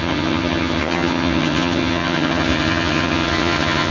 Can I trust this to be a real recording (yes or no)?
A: no